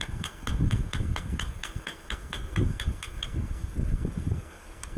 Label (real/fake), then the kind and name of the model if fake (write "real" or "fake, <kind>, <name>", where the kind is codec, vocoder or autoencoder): fake, codec, SNAC